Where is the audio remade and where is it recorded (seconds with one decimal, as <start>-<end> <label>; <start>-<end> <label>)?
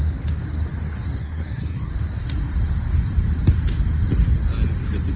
0.0-1.2 recorded; 1.2-1.9 remade; 1.9-5.2 recorded